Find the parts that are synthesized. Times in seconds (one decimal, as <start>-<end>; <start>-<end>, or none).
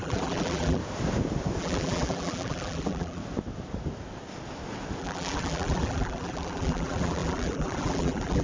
0.0-0.8; 1.6-3.2; 5.0-8.4